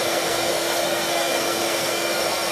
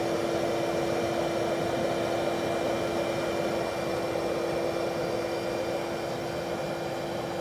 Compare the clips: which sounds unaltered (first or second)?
second